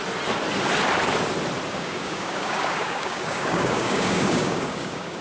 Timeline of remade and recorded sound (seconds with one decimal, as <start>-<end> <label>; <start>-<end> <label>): 0.0-1.7 recorded; 1.7-5.2 remade